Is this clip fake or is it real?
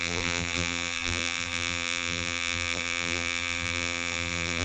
fake